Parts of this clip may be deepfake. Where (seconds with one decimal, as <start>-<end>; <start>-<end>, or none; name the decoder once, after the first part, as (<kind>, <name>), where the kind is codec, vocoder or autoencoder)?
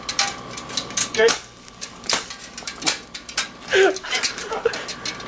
1.0-2.3 (codec, DAC); 3.7-4.7